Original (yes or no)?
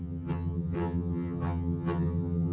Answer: no